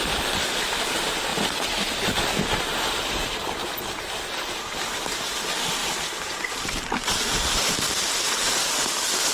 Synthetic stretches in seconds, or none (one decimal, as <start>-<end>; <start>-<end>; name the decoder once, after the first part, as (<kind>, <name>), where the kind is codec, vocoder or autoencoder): none